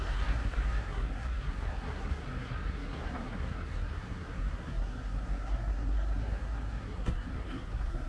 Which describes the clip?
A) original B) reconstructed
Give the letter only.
B